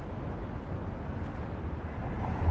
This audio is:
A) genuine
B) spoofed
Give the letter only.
A